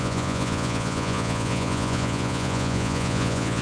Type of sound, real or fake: fake